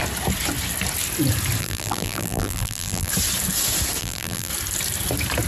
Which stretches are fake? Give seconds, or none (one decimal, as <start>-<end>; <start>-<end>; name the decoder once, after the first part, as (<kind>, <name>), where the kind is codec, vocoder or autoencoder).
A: 1.6-3.1 (vocoder, BigVGAN v2); 4.0-4.5